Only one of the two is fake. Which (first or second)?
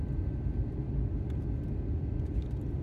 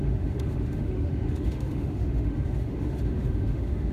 second